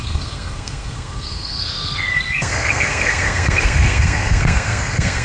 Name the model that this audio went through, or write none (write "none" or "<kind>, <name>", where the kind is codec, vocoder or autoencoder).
codec, SNAC